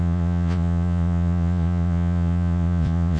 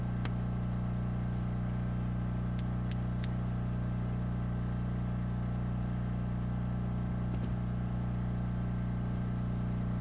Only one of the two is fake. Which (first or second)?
first